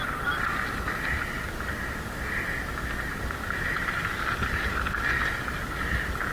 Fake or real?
real